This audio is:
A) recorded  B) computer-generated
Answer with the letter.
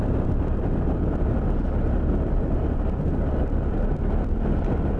A